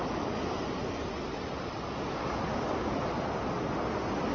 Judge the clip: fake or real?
real